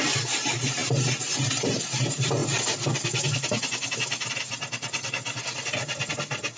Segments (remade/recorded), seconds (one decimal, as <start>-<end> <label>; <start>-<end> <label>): 0.0-6.6 recorded